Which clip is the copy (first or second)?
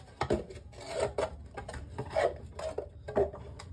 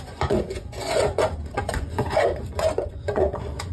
second